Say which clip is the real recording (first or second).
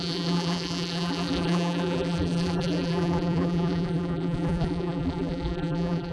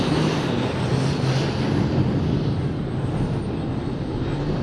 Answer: second